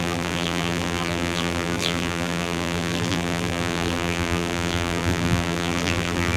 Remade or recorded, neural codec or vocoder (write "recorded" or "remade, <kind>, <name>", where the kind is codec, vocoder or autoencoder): remade, vocoder, BigVGAN v2